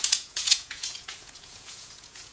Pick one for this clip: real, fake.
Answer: fake